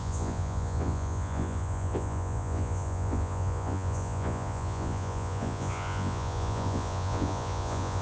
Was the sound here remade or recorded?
remade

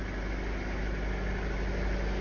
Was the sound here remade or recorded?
recorded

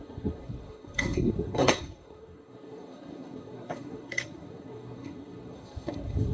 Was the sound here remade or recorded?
remade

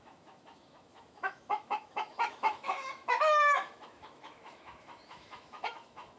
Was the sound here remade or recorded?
remade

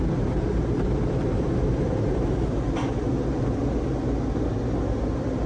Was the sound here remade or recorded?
recorded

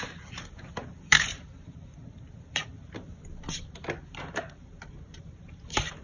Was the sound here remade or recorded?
recorded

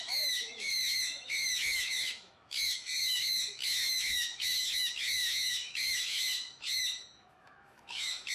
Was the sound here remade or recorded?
remade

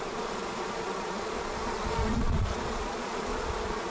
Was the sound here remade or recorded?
remade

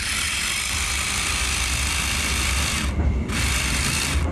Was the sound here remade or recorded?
recorded